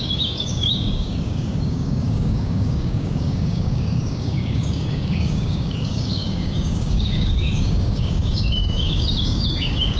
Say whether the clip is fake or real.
fake